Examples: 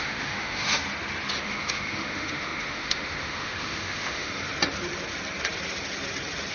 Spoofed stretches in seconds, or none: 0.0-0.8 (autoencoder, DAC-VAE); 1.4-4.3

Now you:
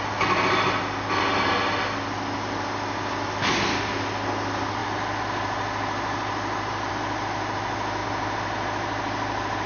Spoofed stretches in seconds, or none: none

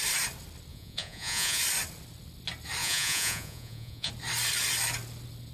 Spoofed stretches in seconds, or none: 0.7-1.6 (vocoder, Vocos); 2.8-4.1

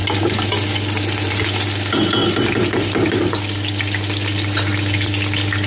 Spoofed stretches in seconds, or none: none

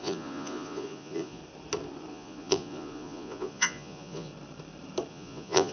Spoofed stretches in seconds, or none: 0.0-1.4 (vocoder, Vocos); 2.1-4.3; 5.1-5.7

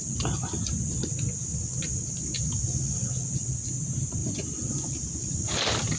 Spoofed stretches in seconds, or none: none